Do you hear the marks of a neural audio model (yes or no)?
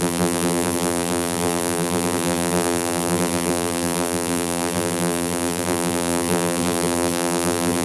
yes